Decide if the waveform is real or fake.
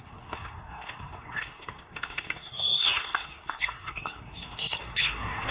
fake